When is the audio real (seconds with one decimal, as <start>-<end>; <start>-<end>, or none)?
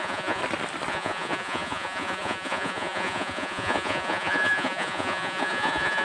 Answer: 0.4-0.9